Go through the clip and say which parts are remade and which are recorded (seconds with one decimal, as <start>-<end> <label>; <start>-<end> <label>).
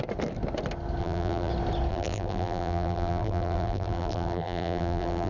0.0-1.0 recorded; 1.0-1.5 remade; 1.5-1.9 recorded; 1.9-5.3 remade